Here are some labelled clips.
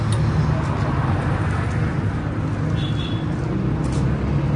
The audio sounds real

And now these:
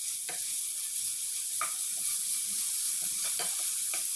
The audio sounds real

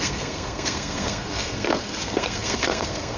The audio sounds fake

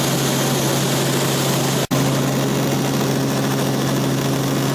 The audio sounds real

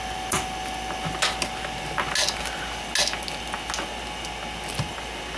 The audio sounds real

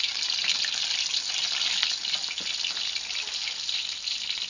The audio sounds real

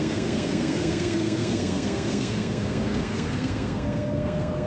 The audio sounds fake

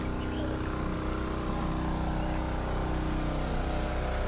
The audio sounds real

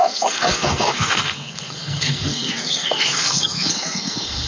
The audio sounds fake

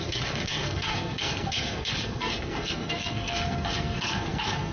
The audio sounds fake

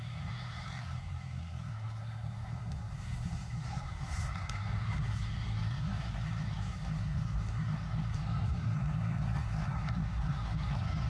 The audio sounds fake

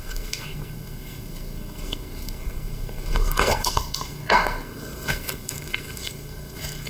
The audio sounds fake